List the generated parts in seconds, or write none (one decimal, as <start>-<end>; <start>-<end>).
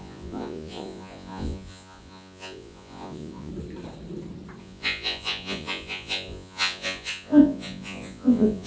0.0-3.5; 4.6-8.7